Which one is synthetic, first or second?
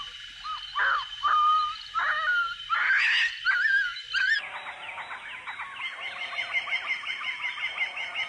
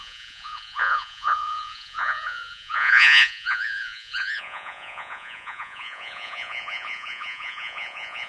second